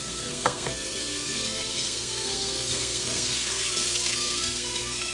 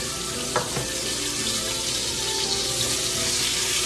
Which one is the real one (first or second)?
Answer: second